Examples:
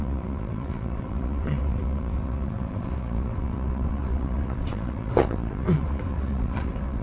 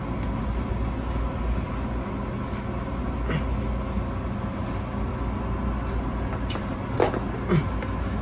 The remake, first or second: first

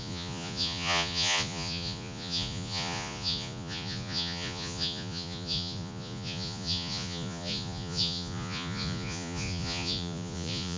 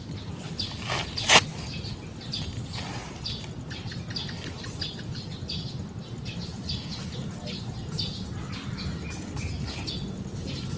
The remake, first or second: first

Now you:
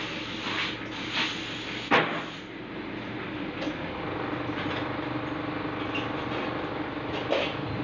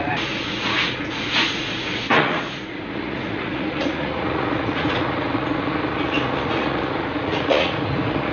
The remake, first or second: second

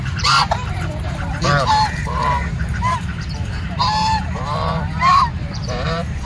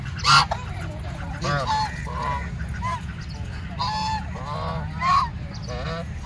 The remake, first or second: first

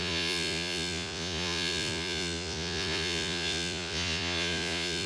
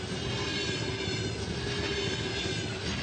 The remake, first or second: first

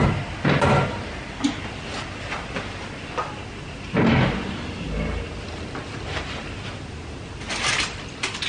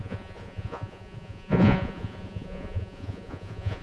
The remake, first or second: second